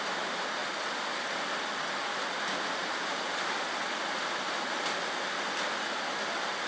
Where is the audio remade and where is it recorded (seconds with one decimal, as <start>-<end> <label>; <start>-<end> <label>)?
0.0-6.7 recorded